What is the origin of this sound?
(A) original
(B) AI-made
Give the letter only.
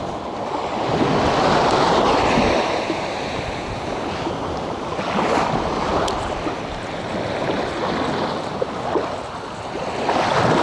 A